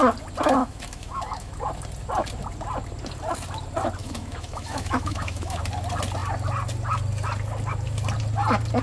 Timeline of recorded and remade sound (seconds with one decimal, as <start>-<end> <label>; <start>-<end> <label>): 0.0-0.6 recorded; 0.6-1.5 remade; 1.5-4.0 recorded; 4.0-5.6 remade; 5.6-8.8 recorded